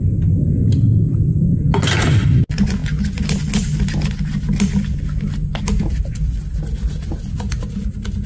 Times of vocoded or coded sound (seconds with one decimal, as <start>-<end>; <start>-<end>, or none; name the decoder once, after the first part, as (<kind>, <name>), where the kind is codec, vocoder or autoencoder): none